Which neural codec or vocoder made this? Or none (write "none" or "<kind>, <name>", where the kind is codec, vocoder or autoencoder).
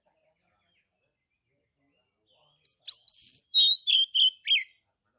none